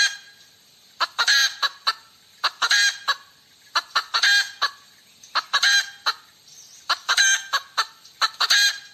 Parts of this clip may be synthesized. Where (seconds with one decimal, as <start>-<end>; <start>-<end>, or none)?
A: 7.0-8.3